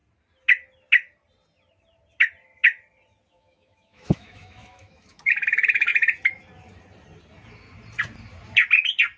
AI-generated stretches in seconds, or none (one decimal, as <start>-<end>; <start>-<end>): 3.3-5.9